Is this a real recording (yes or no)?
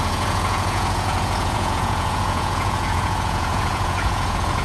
no